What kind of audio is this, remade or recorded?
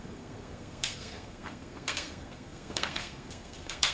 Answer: remade